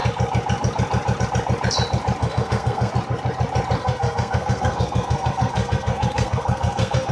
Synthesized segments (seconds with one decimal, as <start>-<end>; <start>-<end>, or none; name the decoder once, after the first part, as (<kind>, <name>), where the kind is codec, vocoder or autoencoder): 2.2-2.9 (codec, SNAC); 3.8-7.1